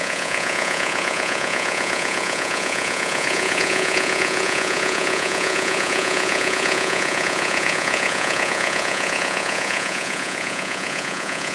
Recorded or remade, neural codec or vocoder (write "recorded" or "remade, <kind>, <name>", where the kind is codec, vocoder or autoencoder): remade, vocoder, Vocos